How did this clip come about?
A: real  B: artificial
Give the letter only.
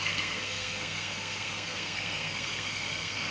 B